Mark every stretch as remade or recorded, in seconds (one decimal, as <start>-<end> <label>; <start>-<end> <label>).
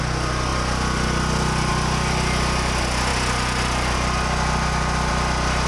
0.0-5.7 recorded